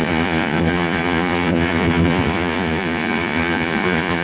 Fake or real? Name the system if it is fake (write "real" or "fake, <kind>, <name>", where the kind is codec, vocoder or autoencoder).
fake, vocoder, Vocos